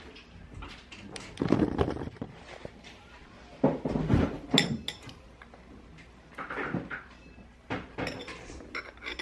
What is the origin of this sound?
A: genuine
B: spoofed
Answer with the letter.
A